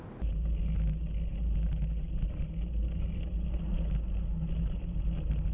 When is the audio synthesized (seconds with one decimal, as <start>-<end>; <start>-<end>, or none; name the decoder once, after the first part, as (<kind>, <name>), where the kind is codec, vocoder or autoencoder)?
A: none